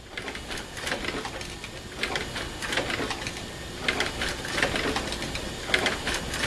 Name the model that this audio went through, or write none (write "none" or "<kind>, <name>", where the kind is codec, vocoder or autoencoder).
none